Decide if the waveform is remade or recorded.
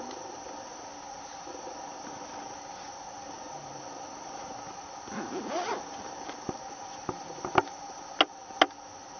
recorded